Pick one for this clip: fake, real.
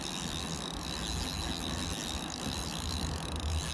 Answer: real